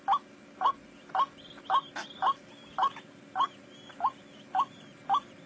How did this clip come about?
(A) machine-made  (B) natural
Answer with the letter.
B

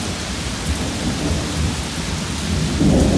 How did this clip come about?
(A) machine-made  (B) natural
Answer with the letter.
B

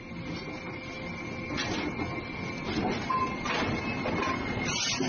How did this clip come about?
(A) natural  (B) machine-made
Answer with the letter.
A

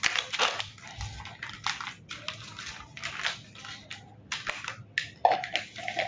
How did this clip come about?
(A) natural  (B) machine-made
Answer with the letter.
A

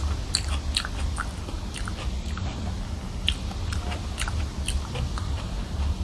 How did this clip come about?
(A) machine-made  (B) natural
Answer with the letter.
B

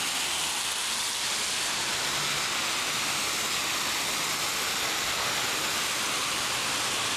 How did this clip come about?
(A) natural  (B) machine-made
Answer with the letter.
A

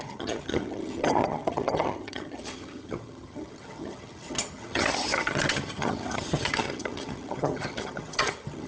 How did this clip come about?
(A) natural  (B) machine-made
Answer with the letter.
B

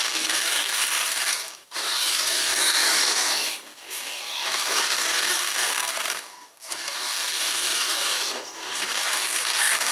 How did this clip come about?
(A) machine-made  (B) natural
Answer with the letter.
A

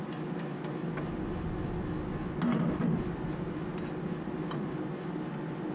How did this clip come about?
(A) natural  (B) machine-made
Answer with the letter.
A